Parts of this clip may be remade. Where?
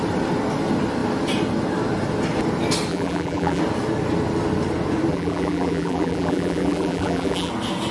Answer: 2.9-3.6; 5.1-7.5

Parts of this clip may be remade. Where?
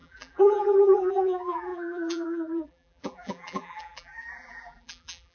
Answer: 0.0-5.3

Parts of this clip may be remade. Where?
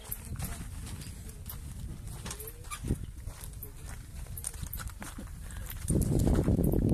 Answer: 5.0-6.2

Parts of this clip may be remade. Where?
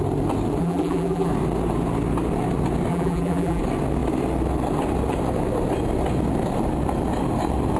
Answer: 0.6-1.3; 2.9-3.6